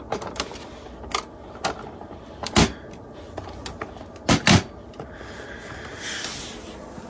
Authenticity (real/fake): real